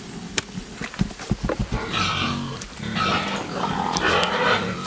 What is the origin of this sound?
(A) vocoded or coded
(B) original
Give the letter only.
B